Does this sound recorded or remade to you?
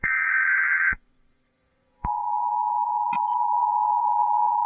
remade